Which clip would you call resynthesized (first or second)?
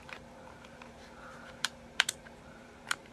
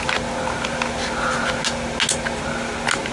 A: first